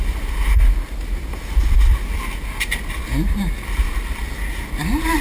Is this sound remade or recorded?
recorded